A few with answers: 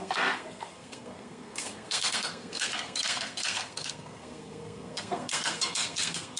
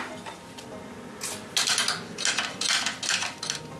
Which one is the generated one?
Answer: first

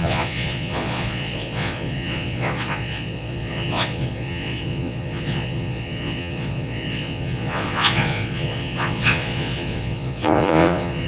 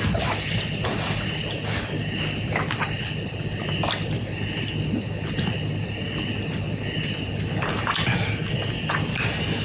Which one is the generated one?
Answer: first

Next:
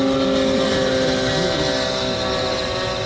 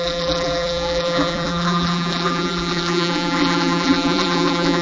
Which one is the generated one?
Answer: second